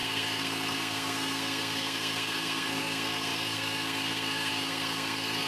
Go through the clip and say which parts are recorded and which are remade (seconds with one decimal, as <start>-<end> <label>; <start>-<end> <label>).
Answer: 0.0-5.5 remade